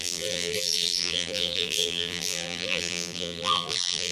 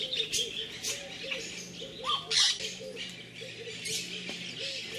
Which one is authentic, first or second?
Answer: second